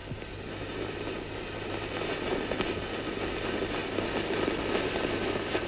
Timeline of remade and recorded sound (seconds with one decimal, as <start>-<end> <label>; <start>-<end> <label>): 0.0-5.7 recorded